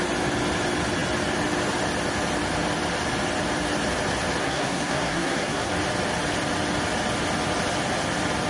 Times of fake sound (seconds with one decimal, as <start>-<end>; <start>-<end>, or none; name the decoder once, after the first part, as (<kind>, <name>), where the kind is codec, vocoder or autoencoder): 4.4-5.7 (codec, SNAC)